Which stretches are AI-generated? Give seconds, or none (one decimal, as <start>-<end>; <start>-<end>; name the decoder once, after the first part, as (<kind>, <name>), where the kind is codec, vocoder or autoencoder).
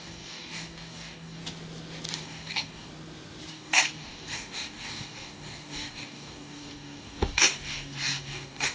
0.0-1.4 (codec, DAC); 2.2-2.9; 3.5-8.7